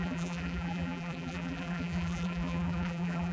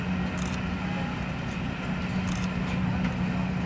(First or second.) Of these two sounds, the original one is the second